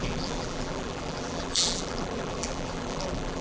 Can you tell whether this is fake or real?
fake